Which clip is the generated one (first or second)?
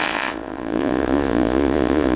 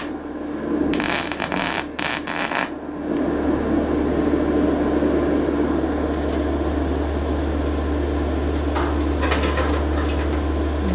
first